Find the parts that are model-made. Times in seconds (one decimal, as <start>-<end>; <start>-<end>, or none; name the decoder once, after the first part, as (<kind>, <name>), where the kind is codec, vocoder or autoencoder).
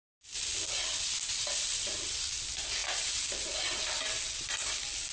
none